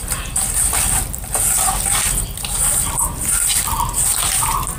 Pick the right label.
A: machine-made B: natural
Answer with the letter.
B